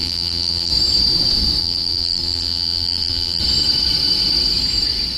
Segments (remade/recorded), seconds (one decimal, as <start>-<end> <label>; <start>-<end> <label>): 0.0-0.7 remade; 0.7-1.6 recorded; 1.6-3.4 remade; 3.4-5.2 recorded